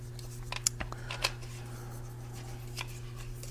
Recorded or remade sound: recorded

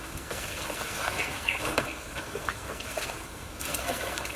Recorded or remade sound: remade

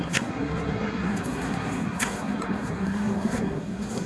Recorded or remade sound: remade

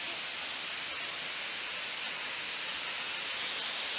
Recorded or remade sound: recorded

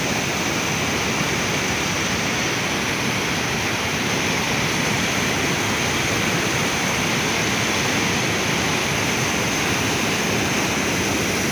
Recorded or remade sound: recorded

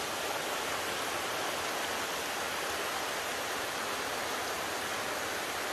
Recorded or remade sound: recorded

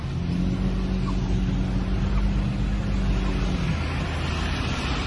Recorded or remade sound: recorded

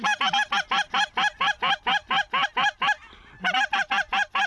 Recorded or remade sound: recorded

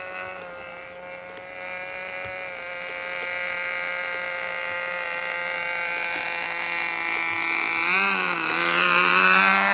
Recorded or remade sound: recorded